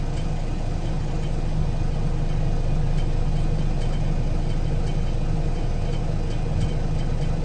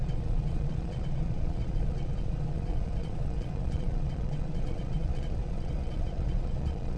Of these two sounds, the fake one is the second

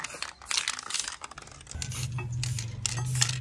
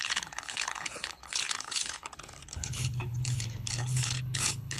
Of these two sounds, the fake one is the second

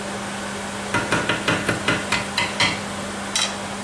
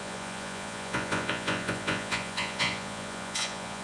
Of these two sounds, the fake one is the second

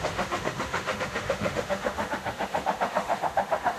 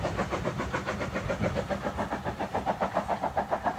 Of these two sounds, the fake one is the first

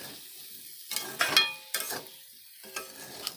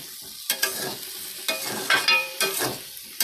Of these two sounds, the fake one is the second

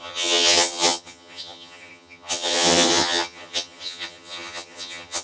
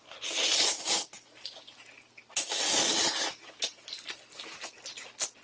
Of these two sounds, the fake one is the first